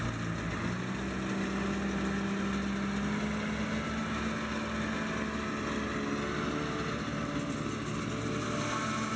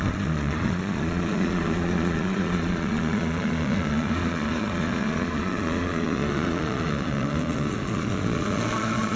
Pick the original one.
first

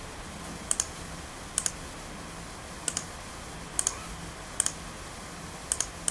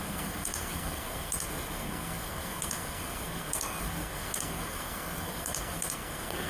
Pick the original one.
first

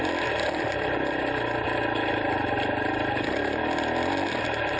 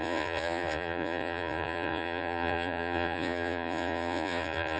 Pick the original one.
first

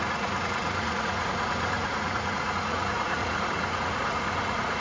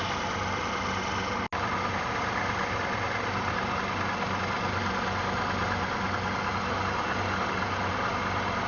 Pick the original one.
second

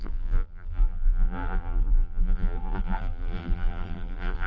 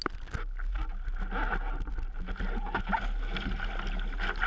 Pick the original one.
second